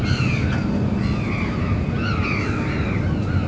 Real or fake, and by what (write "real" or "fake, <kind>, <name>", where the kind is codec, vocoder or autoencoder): real